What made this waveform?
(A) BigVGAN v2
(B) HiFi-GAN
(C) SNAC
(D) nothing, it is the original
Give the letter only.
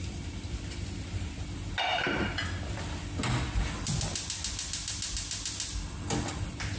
D